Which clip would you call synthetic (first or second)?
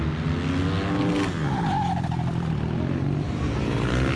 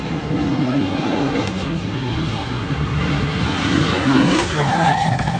second